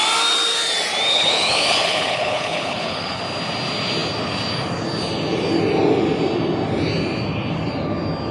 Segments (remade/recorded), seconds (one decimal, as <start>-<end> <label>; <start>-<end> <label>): 0.0-1.1 recorded; 1.1-3.2 remade; 3.2-8.3 recorded